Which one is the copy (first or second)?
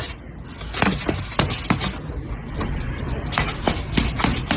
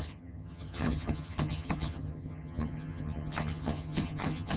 second